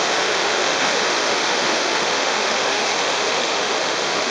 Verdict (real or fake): fake